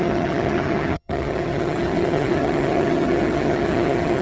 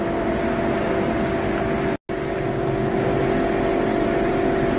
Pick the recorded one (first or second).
second